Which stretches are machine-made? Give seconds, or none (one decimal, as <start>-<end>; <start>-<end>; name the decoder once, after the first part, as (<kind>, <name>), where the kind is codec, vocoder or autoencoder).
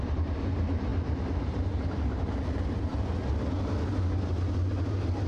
0.0-2.9 (vocoder, BigVGAN v2)